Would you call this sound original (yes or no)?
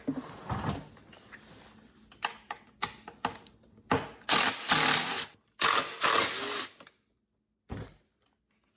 yes